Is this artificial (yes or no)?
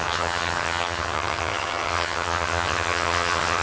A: yes